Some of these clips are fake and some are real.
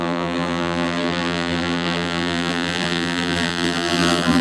fake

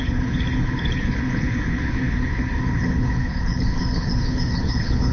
fake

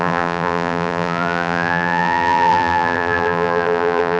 fake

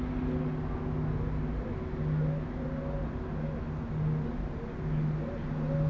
real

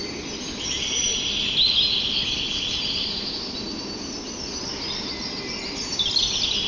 real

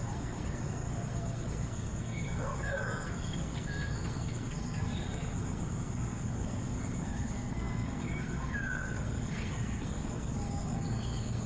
fake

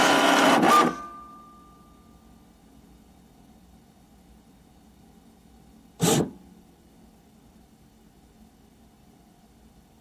real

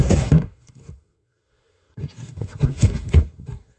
fake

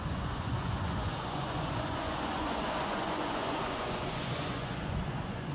fake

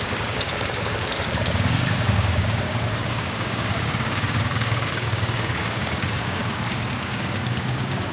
fake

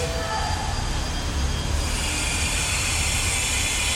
real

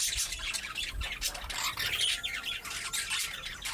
real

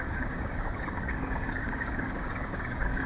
fake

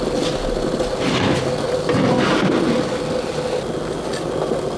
real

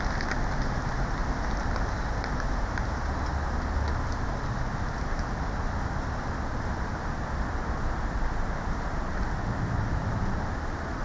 real